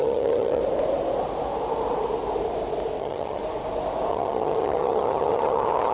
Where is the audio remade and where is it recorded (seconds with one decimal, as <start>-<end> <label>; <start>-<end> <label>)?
0.0-0.6 remade; 0.6-3.0 recorded; 3.0-3.4 remade; 3.4-4.1 recorded; 4.1-5.9 remade